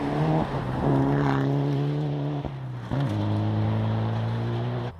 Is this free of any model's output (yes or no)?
yes